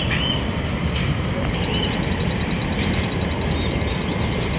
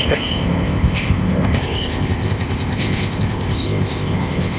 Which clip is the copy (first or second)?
second